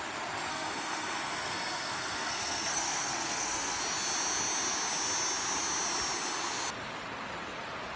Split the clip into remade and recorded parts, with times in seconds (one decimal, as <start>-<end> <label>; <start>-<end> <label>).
0.0-0.5 recorded; 0.5-3.8 remade; 3.8-8.0 recorded